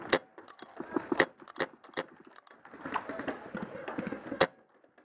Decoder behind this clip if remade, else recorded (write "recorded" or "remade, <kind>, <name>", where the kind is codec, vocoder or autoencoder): recorded